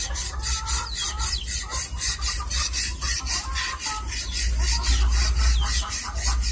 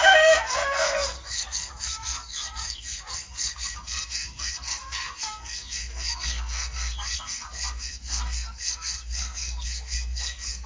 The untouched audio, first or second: first